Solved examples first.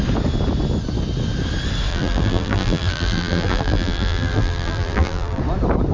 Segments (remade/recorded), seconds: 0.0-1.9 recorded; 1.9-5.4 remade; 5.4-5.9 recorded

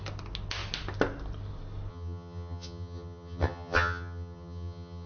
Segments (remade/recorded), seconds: 0.0-1.9 recorded; 1.9-5.1 remade

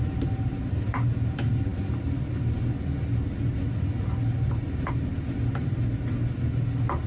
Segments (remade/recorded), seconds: 0.0-7.1 recorded

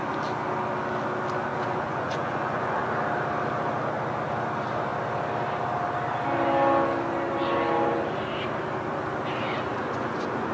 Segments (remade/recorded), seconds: 0.0-1.5 recorded; 1.5-2.9 remade; 2.9-9.7 recorded; 9.7-10.5 remade

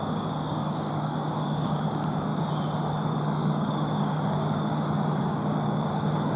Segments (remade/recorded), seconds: 0.0-2.3 remade; 2.3-3.2 recorded; 3.2-4.7 remade; 4.7-5.2 recorded; 5.2-6.4 remade

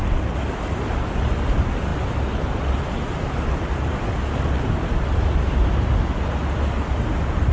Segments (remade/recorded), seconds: 0.0-7.5 recorded

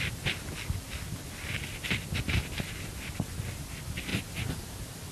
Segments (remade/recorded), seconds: 0.0-5.1 recorded

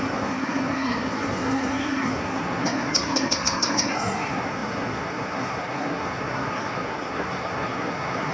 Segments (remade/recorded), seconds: 0.0-8.3 remade